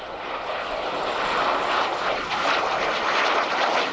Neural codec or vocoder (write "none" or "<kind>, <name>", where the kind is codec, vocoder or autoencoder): none